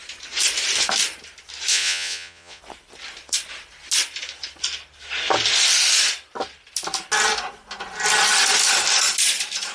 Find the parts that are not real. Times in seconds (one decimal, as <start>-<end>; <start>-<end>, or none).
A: 1.7-2.6